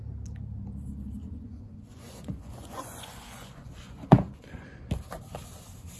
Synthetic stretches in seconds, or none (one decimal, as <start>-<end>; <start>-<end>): 1.2-4.8